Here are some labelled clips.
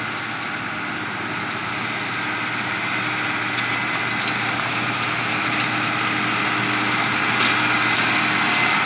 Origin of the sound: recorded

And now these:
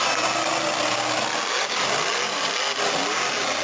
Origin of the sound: recorded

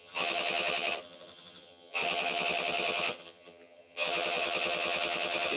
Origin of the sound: remade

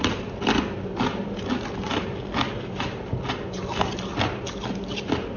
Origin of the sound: recorded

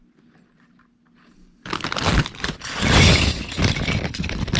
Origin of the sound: recorded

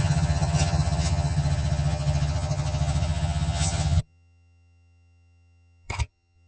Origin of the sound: remade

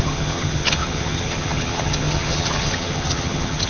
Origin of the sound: remade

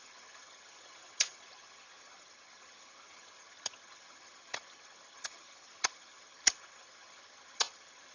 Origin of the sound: remade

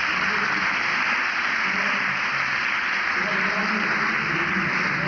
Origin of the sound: recorded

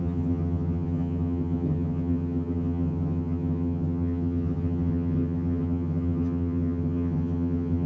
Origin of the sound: remade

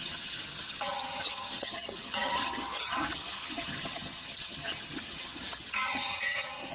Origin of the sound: remade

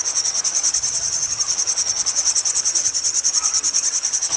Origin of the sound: remade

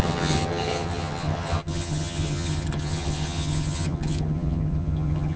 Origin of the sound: remade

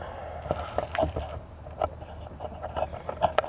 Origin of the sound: recorded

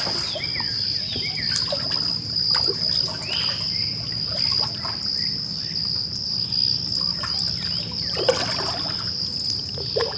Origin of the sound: recorded